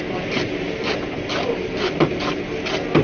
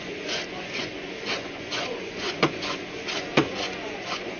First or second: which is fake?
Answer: second